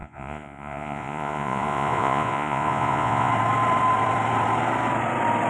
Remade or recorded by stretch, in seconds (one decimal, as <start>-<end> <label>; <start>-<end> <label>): 0.0-3.3 remade; 3.3-5.5 recorded